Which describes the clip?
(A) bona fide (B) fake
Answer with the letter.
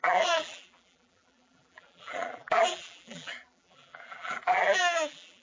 B